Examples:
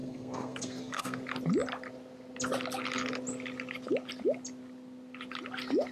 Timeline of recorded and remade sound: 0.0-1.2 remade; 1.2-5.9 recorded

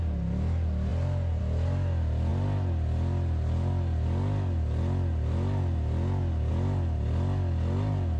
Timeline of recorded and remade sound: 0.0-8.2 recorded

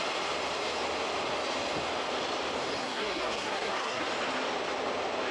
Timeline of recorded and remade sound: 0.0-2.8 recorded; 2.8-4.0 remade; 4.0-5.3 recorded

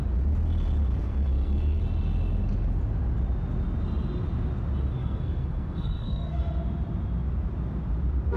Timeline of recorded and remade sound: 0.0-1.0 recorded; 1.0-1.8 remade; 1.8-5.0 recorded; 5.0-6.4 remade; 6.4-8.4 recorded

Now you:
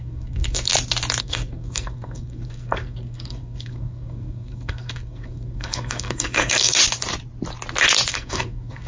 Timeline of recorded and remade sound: 0.0-0.7 remade; 0.7-1.2 recorded; 1.2-6.8 remade; 6.8-8.1 recorded; 8.1-8.9 remade

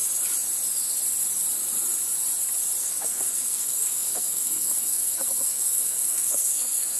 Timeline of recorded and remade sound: 0.0-2.8 recorded; 2.8-7.0 remade

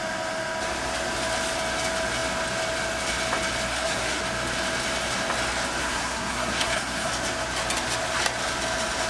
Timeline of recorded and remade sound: 0.0-3.7 recorded; 3.7-4.2 remade; 4.2-5.8 recorded; 5.8-7.1 remade; 7.1-9.1 recorded

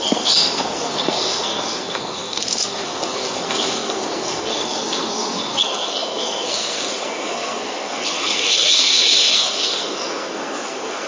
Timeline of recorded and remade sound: 0.0-11.1 remade